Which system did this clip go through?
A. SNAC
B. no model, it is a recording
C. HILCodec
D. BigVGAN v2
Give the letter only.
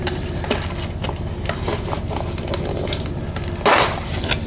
B